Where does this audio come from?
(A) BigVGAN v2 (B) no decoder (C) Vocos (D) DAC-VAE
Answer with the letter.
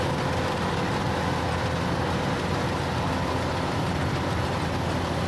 B